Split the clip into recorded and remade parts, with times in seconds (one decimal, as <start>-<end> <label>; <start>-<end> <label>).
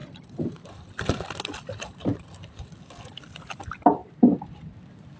0.0-5.2 recorded